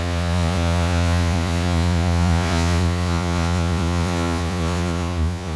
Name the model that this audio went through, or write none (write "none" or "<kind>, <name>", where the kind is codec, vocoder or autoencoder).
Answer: vocoder, Vocos